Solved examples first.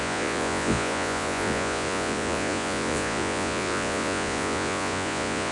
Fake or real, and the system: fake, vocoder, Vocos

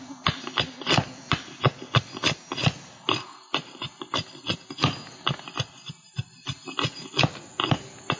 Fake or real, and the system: real